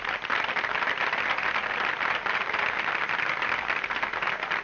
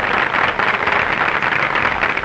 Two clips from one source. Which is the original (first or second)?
second